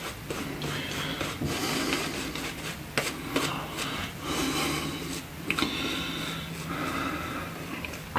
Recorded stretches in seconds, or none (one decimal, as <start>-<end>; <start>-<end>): 0.0-8.2